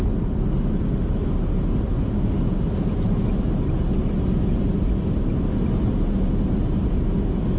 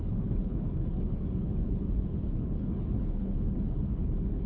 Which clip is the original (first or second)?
first